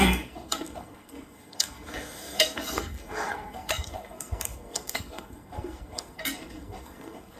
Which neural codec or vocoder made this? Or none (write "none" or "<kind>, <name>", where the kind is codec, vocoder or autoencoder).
codec, SNAC